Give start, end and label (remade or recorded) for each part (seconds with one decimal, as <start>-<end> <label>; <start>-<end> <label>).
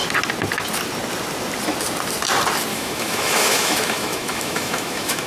0.0-2.7 recorded; 2.7-5.3 remade